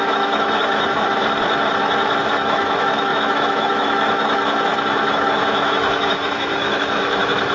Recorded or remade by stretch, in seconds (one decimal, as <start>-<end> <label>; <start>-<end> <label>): 0.0-1.2 remade; 1.2-2.2 recorded; 2.2-7.5 remade